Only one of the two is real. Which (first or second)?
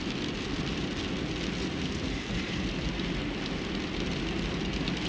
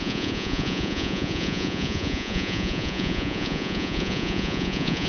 first